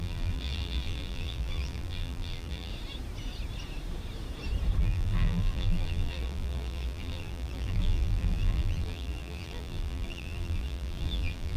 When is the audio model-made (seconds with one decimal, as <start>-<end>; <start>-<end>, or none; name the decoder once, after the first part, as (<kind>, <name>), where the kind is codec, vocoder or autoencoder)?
0.0-2.7 (vocoder, BigVGAN v2); 4.8-11.6